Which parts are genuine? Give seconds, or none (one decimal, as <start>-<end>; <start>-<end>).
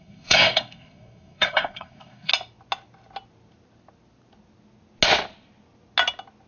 2.3-6.5